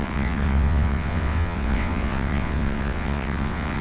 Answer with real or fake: fake